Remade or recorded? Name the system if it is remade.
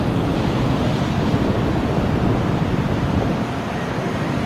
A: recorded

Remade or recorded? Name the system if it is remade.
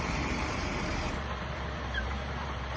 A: remade, vocoder, BigVGAN v2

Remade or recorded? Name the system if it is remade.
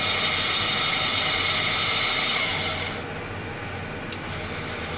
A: recorded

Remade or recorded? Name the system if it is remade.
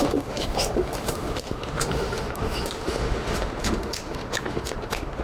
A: remade, autoencoder, DAC-VAE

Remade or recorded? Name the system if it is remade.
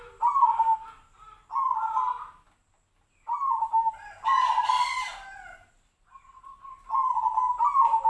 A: recorded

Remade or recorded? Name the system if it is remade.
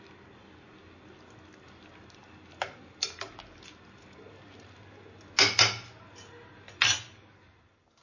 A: recorded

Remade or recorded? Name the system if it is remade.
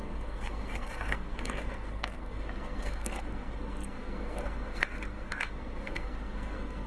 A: remade, codec, SNAC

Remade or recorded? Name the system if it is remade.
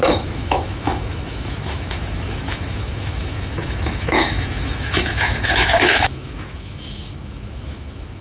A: remade, autoencoder, DAC-VAE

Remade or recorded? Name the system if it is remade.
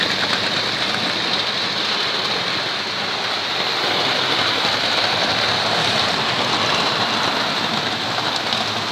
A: recorded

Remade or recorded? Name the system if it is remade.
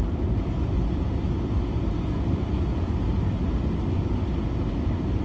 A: recorded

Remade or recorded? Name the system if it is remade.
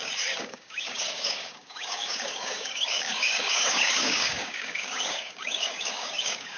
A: remade, codec, DAC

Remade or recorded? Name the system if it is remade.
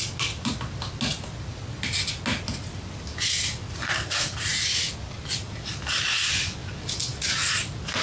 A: recorded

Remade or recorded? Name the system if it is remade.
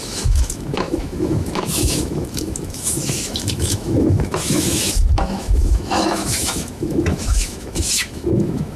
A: remade, autoencoder, DAC-VAE